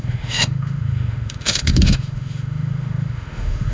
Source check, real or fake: fake